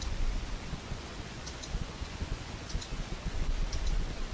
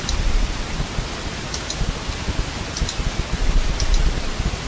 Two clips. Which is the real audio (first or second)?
second